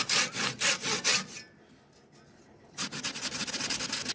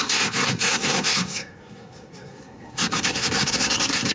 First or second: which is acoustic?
first